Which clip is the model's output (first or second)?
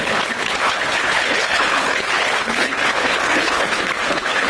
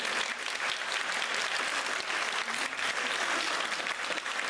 first